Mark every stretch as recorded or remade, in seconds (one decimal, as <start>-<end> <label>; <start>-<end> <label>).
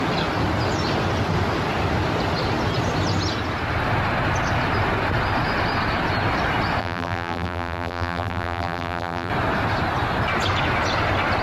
0.0-6.8 recorded; 6.8-9.3 remade; 9.3-11.4 recorded